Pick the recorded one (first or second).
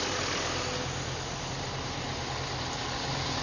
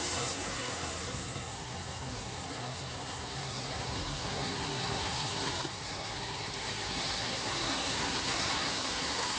first